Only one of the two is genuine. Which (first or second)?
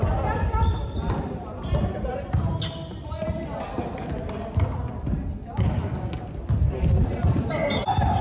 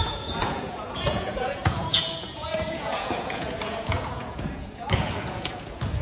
first